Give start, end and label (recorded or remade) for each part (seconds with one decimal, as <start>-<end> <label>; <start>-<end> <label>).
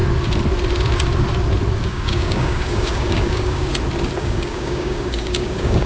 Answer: 0.0-1.8 recorded; 1.8-3.7 remade; 3.7-4.2 recorded; 4.2-5.9 remade